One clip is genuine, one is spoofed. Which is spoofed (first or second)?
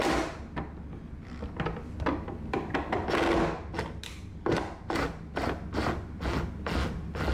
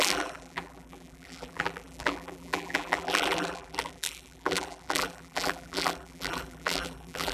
second